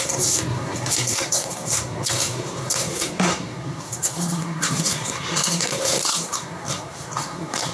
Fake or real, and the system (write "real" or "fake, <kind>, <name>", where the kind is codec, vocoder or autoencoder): fake, codec, SNAC